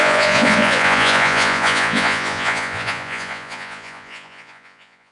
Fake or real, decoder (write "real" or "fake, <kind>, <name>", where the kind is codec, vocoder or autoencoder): fake, vocoder, Vocos